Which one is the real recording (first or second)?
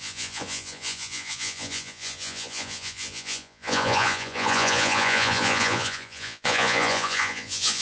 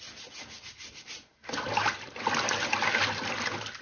second